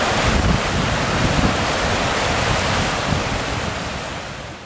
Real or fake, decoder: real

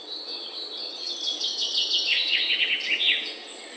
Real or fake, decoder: fake, vocoder, WaveNeXt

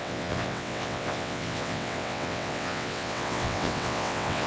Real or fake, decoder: fake, vocoder, WaveNeXt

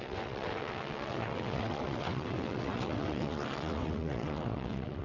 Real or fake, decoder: fake, vocoder, WaveNeXt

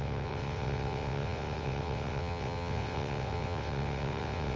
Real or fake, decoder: fake, vocoder, WaveNeXt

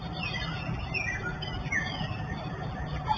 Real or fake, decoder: real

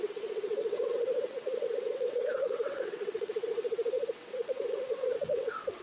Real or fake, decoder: fake, vocoder, WaveNeXt